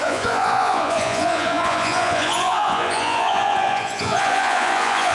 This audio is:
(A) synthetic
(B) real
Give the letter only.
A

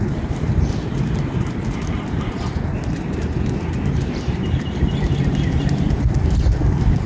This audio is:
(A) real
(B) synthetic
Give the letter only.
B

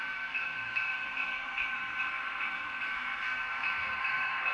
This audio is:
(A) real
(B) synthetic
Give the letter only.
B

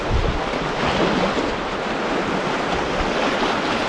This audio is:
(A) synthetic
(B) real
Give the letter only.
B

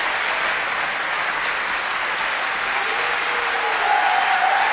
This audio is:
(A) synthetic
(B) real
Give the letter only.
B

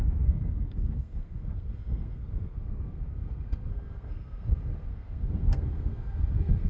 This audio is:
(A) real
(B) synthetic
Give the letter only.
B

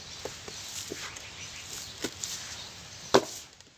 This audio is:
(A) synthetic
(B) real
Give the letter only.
B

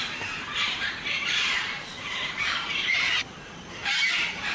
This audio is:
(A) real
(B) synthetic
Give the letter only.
B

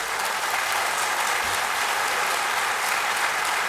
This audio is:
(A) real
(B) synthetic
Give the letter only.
A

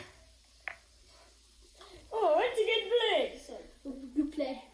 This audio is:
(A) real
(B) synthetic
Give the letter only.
A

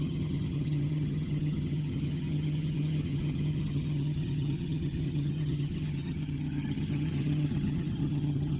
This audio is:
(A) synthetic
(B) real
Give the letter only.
A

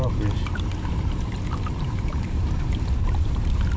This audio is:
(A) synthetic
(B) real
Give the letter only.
A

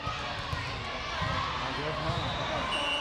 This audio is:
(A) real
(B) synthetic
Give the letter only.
A